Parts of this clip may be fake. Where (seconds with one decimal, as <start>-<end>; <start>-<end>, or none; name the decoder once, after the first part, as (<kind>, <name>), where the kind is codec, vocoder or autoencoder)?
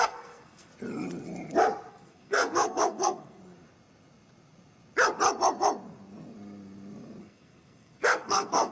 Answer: 0.0-0.7 (codec, SNAC); 1.9-3.4; 7.2-8.7